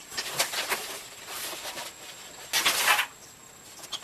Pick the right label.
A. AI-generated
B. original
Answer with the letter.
B